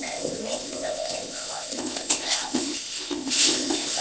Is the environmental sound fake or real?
fake